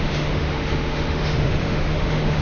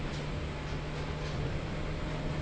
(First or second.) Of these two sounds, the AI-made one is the first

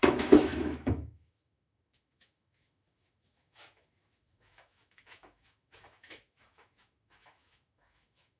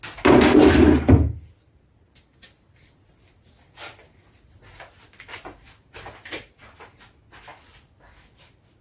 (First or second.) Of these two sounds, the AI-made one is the first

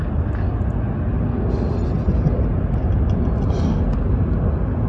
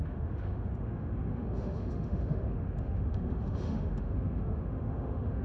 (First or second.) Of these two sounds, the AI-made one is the second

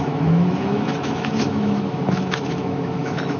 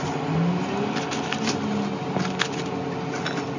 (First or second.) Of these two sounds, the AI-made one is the first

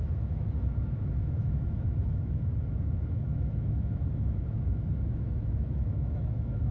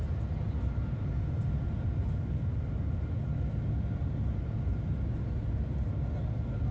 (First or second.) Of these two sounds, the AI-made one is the first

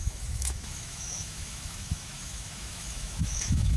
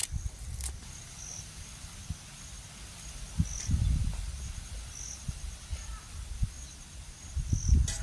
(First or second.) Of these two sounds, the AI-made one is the first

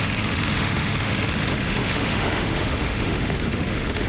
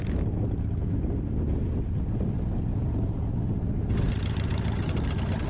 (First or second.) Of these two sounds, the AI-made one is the first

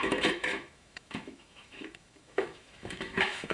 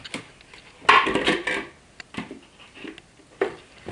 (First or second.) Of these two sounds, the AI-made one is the first